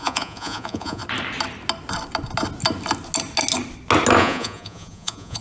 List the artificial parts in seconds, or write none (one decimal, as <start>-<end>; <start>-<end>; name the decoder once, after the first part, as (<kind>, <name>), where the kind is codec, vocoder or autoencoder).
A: 0.0-1.0 (vocoder, Vocos); 4.2-5.4

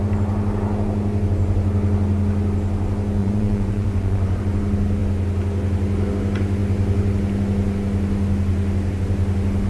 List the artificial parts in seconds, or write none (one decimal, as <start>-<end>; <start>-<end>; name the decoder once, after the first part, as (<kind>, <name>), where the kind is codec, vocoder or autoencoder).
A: 3.2-4.4 (vocoder, Vocos)

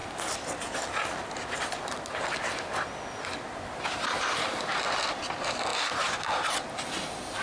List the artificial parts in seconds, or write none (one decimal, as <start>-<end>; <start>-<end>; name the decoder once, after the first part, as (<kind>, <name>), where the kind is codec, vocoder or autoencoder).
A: none